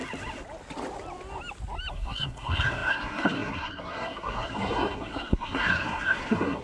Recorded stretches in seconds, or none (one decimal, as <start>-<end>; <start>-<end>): 0.0-1.9